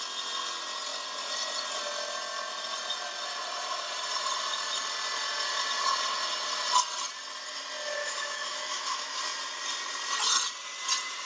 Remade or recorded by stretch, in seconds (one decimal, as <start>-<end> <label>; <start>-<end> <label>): 0.0-8.0 recorded; 8.0-9.2 remade; 9.2-11.3 recorded